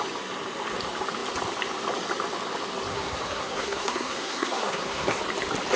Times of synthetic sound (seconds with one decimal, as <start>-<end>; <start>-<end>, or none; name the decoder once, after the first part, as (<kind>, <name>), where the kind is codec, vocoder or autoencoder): 2.9-5.2 (codec, SNAC)